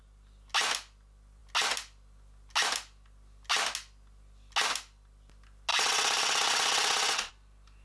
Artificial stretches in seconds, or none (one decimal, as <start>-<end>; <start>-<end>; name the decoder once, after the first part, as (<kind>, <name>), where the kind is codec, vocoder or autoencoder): 5.7-7.3 (vocoder, WaveNeXt)